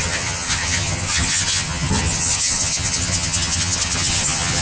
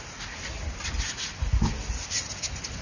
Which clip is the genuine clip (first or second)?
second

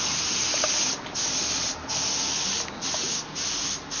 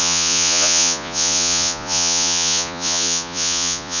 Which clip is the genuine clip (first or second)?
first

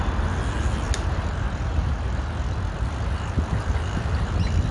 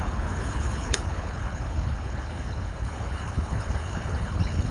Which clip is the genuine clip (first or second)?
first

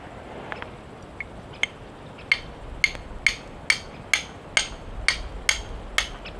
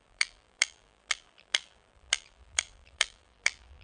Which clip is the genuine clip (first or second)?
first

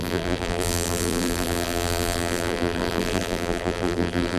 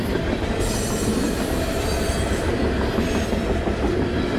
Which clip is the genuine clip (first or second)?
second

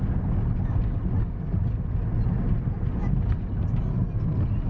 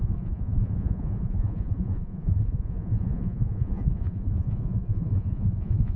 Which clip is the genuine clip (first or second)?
first